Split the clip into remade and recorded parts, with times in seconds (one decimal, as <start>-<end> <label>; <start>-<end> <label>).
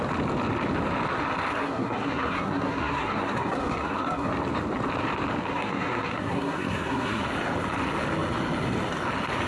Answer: 0.0-1.6 recorded; 1.6-4.3 remade; 4.3-5.5 recorded; 5.5-7.2 remade; 7.2-9.5 recorded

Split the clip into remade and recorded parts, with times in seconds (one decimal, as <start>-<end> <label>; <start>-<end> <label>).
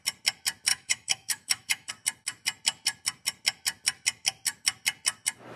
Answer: 0.0-0.7 recorded; 0.7-1.9 remade; 1.9-5.6 recorded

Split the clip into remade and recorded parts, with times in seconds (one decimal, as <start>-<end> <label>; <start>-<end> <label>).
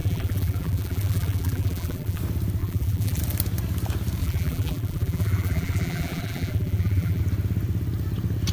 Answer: 0.0-2.2 remade; 2.2-2.6 recorded; 2.6-3.2 remade; 3.2-4.2 recorded; 4.2-7.2 remade; 7.2-8.5 recorded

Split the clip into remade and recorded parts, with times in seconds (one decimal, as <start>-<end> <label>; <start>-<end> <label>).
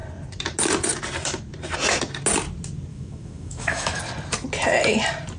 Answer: 0.0-2.9 recorded; 2.9-4.0 remade; 4.0-5.4 recorded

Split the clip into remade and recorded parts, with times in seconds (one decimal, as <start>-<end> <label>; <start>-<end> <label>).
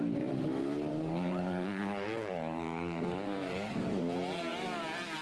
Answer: 0.0-0.9 recorded; 0.9-4.0 remade; 4.0-5.2 recorded